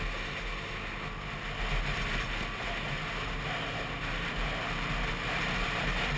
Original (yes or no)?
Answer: yes